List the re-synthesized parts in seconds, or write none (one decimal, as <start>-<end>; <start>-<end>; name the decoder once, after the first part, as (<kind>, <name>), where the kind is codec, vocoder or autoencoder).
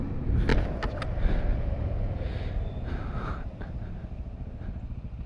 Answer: none